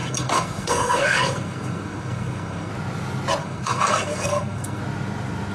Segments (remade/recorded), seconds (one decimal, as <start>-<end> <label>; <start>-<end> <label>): 0.0-2.7 remade; 2.7-3.4 recorded; 3.4-4.8 remade; 4.8-5.5 recorded